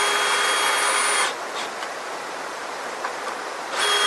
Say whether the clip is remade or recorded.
recorded